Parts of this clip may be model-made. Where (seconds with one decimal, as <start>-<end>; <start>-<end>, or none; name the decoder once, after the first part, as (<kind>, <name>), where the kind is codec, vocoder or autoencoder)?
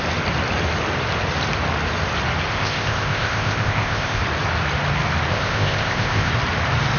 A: 2.5-4.2 (codec, ZipCodec); 5.3-6.3